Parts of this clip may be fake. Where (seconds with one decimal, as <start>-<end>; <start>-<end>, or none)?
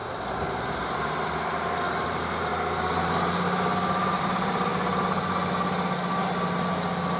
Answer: 0.7-2.5; 4.2-4.7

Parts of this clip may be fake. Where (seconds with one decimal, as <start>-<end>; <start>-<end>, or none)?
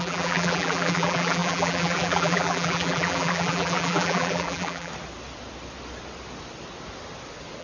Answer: 0.0-4.9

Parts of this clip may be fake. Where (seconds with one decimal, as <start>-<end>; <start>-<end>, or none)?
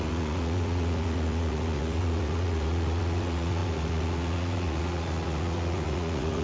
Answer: 0.0-6.4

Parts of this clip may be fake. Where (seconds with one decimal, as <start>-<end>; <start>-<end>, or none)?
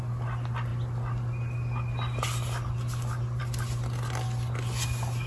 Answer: none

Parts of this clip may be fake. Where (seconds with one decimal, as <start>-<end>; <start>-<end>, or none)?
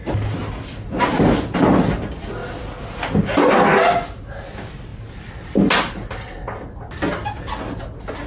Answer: none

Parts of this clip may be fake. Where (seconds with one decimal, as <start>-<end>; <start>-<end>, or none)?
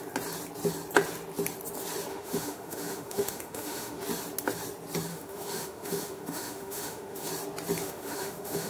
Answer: 2.1-4.0; 5.1-7.3; 7.8-8.7